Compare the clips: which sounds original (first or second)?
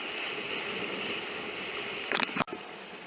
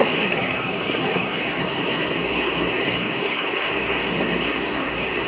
first